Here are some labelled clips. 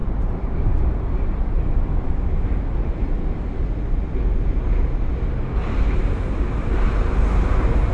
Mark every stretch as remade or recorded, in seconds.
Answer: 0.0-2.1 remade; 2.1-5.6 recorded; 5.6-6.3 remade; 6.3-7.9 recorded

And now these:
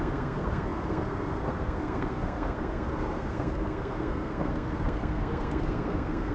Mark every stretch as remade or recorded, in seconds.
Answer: 0.0-6.3 remade

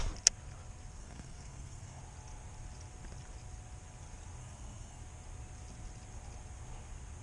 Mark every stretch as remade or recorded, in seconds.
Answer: 0.0-1.0 recorded; 1.0-2.0 remade; 2.0-4.4 recorded; 4.4-5.0 remade; 5.0-7.2 recorded

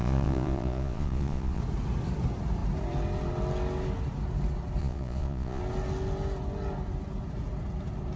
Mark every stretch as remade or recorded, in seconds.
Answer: 0.0-1.6 remade; 1.6-4.8 recorded; 4.8-5.6 remade; 5.6-8.2 recorded

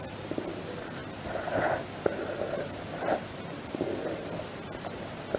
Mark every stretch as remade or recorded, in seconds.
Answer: 0.0-5.4 recorded

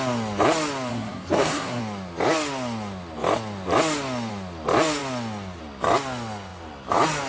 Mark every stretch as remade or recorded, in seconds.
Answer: 0.0-0.9 recorded; 0.9-1.8 remade; 1.8-7.3 recorded

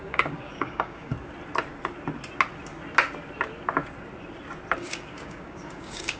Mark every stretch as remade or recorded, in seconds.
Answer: 0.0-1.1 remade; 1.1-4.8 recorded; 4.8-6.2 remade

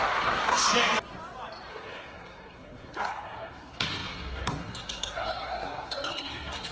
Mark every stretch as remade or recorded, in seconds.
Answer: 0.0-0.7 remade; 0.7-1.7 recorded; 1.7-6.7 remade